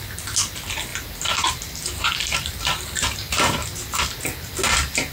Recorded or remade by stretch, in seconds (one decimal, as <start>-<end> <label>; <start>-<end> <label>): 0.0-0.9 recorded; 0.9-4.0 remade; 4.0-5.1 recorded

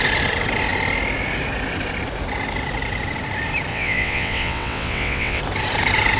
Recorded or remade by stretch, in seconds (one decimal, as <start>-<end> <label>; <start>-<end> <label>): 0.0-3.7 recorded; 3.7-5.4 remade; 5.4-6.2 recorded

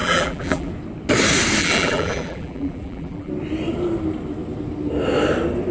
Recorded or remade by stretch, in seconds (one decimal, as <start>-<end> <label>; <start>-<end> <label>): 0.0-0.7 remade; 0.7-1.6 recorded; 1.6-3.3 remade; 3.3-5.7 recorded

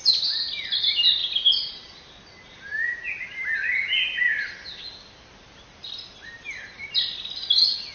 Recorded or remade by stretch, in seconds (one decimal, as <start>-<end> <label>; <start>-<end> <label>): 0.0-7.9 recorded

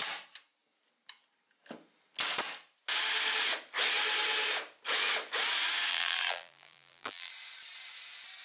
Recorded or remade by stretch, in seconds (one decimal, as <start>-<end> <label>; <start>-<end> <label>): 0.0-5.9 recorded; 5.9-7.3 remade; 7.3-8.4 recorded